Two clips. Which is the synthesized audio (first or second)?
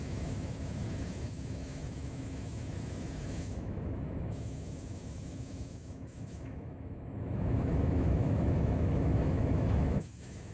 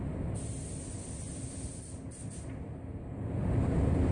first